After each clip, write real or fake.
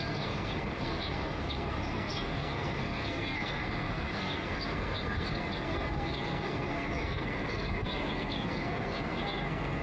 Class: fake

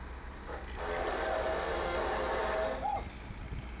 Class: real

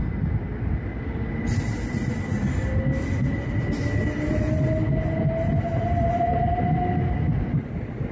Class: real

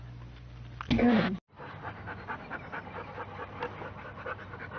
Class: real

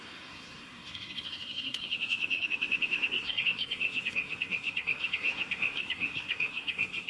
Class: fake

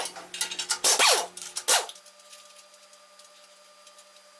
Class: real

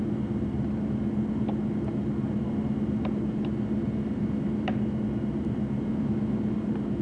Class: real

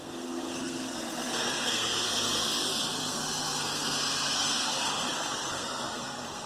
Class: fake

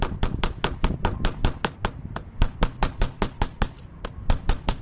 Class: real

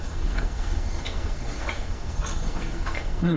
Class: fake